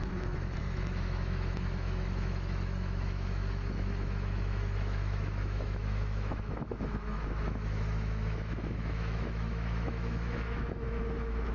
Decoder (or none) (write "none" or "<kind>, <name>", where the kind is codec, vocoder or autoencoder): autoencoder, DAC-VAE